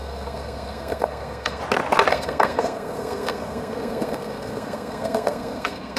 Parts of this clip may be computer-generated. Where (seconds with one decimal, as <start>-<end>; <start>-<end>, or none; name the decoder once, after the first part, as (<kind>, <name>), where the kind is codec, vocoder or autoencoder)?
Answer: 0.0-1.6 (codec, SNAC); 2.1-6.0